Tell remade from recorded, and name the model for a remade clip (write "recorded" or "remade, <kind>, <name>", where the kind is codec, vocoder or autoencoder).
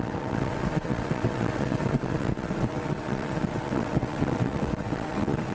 remade, vocoder, WaveNeXt